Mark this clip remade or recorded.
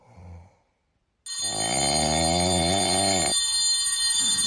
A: recorded